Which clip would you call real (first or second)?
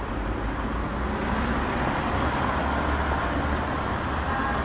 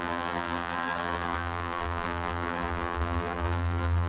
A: first